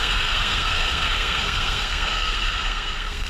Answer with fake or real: fake